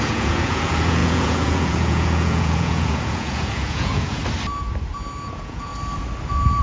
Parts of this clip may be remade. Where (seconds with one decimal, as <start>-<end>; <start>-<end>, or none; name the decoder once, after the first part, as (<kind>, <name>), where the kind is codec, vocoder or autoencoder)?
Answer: 0.0-4.2 (vocoder, Vocos); 5.3-5.7